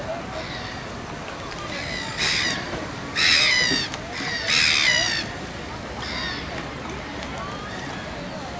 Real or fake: real